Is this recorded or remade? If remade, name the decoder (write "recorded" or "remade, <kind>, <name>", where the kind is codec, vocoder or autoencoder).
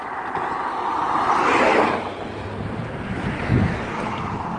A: recorded